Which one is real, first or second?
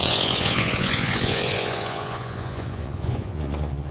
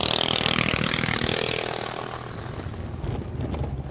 second